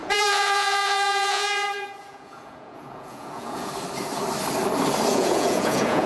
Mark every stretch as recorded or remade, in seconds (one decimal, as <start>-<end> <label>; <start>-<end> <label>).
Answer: 0.0-3.7 remade; 3.7-5.1 recorded; 5.1-6.1 remade